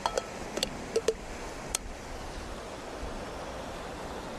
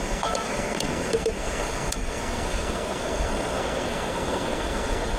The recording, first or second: first